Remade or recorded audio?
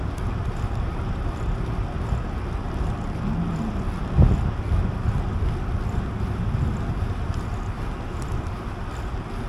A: recorded